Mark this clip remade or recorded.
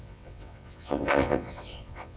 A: remade